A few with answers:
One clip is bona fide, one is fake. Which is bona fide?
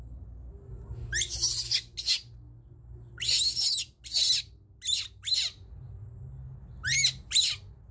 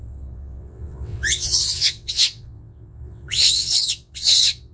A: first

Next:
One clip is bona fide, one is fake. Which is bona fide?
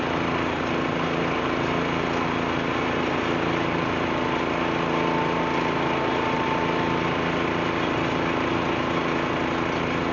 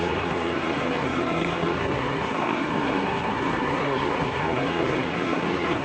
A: first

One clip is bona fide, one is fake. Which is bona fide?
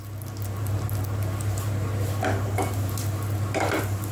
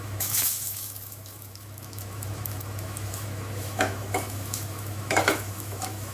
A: first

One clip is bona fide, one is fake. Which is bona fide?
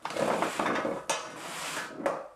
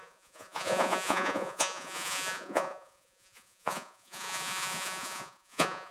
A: first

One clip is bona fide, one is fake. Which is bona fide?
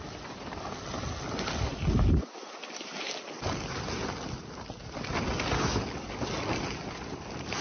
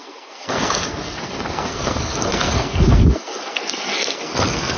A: first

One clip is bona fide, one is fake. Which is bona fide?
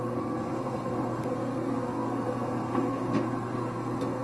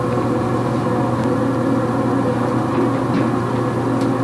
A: second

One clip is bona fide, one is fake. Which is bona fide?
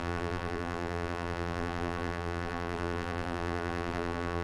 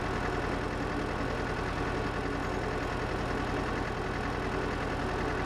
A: second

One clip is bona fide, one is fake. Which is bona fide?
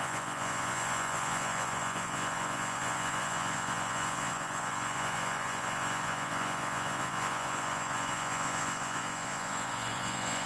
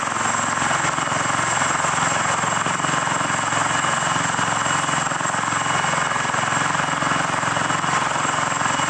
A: second